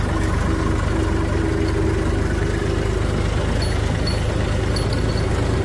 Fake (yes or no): no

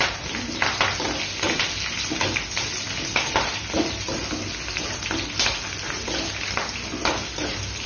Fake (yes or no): no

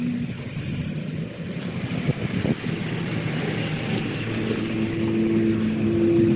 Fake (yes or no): no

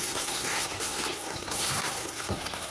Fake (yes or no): yes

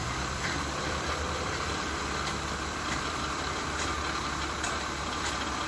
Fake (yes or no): yes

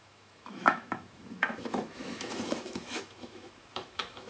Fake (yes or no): yes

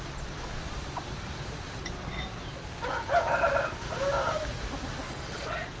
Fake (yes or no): no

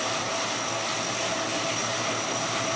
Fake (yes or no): no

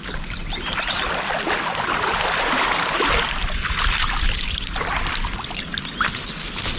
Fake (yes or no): no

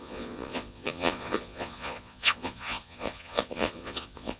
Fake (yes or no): yes